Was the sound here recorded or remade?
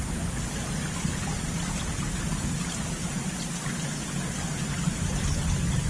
recorded